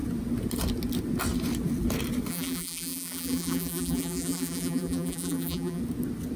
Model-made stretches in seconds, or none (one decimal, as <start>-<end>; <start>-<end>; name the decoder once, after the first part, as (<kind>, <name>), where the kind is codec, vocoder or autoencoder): 2.3-5.8 (vocoder, BigVGAN v2)